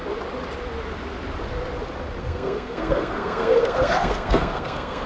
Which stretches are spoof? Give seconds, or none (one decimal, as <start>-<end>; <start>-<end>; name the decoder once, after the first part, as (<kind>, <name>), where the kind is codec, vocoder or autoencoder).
2.2-5.1 (codec, SNAC)